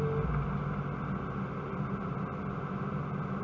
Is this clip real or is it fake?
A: real